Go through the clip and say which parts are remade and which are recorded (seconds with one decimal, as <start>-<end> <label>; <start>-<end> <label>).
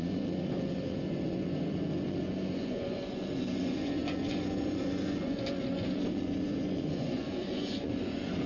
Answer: 0.0-8.5 remade